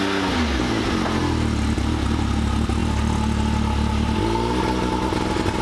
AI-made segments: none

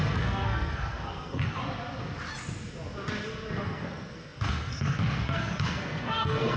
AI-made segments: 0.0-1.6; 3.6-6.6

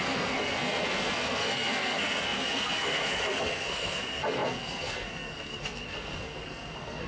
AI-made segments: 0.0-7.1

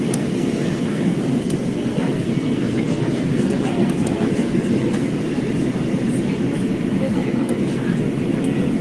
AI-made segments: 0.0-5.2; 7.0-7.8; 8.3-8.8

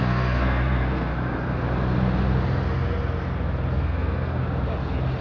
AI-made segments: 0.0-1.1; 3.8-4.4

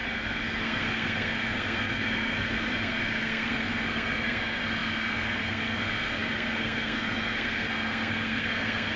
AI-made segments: 0.0-9.0